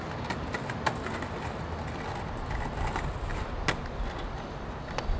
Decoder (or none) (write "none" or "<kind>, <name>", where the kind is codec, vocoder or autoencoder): none